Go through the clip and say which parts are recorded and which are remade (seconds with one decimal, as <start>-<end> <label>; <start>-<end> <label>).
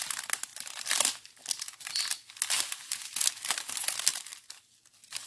0.0-5.3 recorded